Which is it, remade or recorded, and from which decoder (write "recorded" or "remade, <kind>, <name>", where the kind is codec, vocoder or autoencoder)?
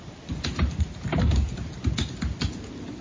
recorded